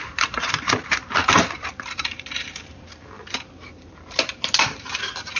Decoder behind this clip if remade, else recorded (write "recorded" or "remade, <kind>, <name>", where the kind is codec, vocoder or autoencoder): remade, vocoder, BigVGAN v2